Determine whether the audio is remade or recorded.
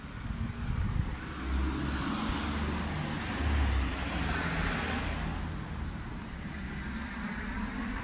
recorded